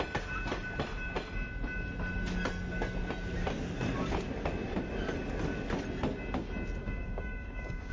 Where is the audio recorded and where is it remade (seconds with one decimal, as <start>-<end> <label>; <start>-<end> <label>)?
0.0-6.8 recorded; 6.8-7.9 remade